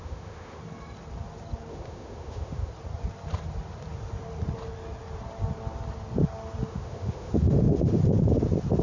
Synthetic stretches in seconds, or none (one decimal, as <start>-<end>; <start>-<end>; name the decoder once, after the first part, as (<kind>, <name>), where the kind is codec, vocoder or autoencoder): 0.0-0.6 (autoencoder, DAC-VAE); 1.7-2.7; 6.7-8.0